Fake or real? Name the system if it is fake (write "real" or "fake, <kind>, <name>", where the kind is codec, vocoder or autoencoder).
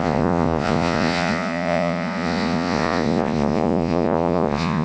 fake, vocoder, Vocos